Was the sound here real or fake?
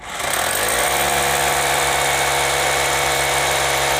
real